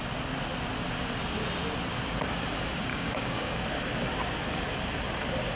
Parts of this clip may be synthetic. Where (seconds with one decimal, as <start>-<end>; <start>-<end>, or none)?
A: 2.9-3.6